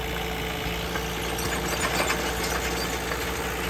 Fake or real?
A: real